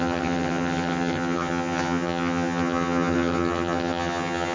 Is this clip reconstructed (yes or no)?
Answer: yes